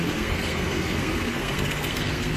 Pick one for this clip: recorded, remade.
remade